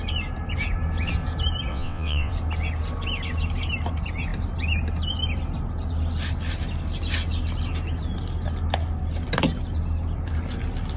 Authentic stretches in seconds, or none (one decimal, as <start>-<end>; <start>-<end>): 0.0-1.7; 2.3-11.0